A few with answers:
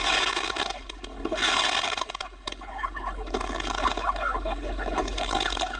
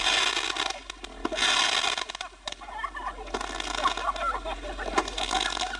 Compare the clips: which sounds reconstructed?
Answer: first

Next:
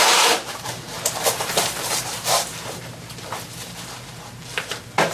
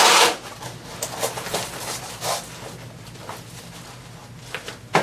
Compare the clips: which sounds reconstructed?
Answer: first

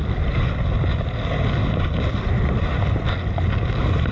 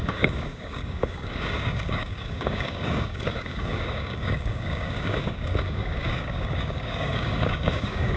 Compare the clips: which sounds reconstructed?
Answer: second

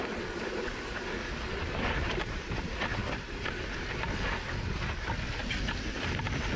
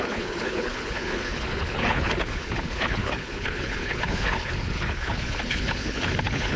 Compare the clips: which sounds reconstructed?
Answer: second